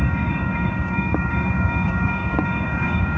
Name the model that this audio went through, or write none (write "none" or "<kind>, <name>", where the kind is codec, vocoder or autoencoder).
codec, DAC